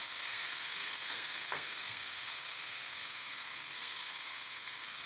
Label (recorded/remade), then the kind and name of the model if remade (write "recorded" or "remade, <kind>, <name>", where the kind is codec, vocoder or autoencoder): remade, codec, SNAC